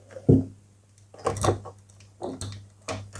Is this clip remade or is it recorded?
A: recorded